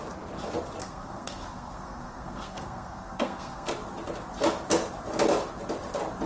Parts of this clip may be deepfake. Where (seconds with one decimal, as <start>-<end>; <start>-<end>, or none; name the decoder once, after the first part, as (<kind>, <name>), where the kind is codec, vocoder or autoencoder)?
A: 0.8-3.7 (codec, SNAC)